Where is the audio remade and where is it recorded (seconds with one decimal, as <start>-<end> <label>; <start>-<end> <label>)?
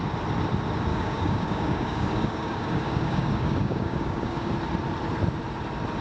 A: 0.0-0.9 recorded; 0.9-4.5 remade; 4.5-6.0 recorded